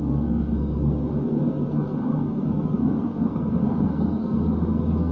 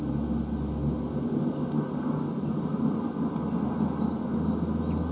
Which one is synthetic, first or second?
first